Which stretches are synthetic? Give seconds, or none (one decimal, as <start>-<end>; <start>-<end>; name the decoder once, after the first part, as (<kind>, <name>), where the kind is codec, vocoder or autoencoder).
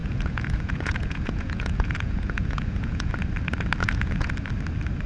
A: 0.0-3.1 (vocoder, Vocos); 3.8-4.3